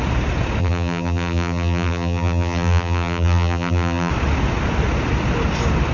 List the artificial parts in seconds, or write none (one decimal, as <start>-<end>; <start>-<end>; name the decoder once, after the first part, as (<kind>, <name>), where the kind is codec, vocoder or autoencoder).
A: 0.6-4.1 (vocoder, BigVGAN v2)